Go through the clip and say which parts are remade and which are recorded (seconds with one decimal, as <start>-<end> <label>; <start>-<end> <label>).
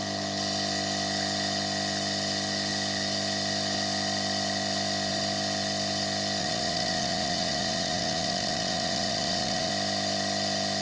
0.0-6.4 recorded; 6.4-9.7 remade; 9.7-10.8 recorded